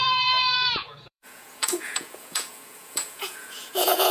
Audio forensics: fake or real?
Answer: fake